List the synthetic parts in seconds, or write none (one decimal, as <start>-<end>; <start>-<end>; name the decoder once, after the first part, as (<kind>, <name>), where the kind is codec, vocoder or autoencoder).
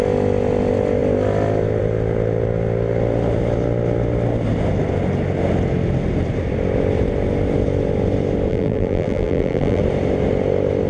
8.5-9.8 (vocoder, BigVGAN v2)